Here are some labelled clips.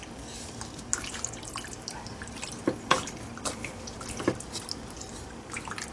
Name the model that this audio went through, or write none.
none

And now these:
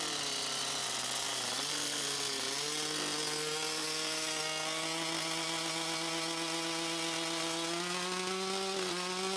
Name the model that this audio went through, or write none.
none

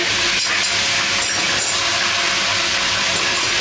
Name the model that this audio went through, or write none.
none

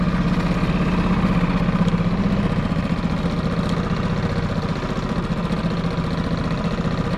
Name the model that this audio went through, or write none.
none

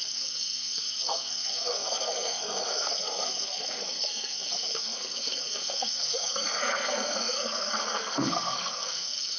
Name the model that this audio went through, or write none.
codec, SNAC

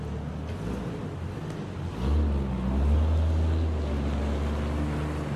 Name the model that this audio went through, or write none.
none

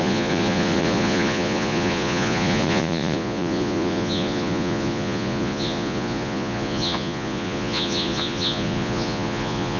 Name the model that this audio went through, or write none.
vocoder, Vocos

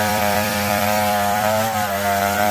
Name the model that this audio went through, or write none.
vocoder, BigVGAN v2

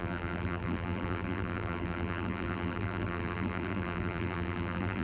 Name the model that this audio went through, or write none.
vocoder, BigVGAN v2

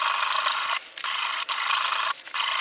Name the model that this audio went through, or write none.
none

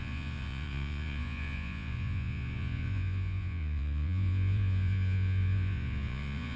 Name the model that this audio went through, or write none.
vocoder, Vocos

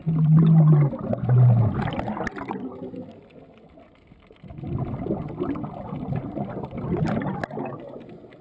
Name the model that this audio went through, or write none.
none